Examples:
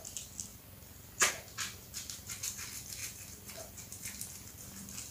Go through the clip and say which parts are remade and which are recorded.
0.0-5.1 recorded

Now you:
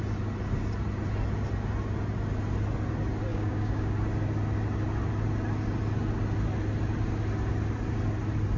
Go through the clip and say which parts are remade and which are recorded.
0.0-3.3 recorded; 3.3-3.9 remade; 3.9-8.6 recorded

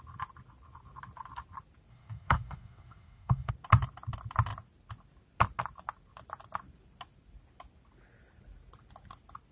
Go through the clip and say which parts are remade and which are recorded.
0.0-1.9 recorded; 1.9-3.5 remade; 3.5-9.5 recorded

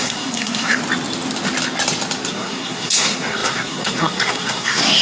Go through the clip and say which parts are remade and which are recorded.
0.0-0.8 remade; 0.8-2.3 recorded; 2.3-5.0 remade

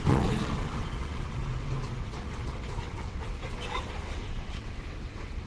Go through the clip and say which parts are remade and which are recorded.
0.0-5.5 remade

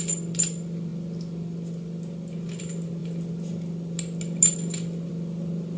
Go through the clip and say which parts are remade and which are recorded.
0.0-5.8 recorded

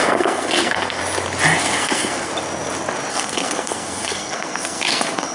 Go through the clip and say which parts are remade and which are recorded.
0.0-1.0 remade; 1.0-1.6 recorded; 1.6-2.3 remade; 2.3-3.1 recorded; 3.1-5.3 remade

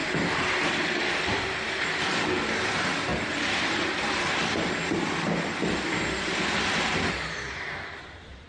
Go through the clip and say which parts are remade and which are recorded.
0.0-2.4 remade; 2.4-3.1 recorded; 3.1-4.7 remade; 4.7-8.5 recorded